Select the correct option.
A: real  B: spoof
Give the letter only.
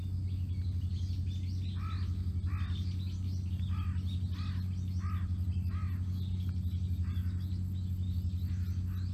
A